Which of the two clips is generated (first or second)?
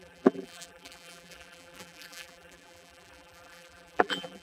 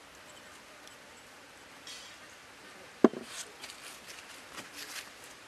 first